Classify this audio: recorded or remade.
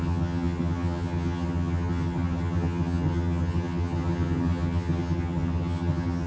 remade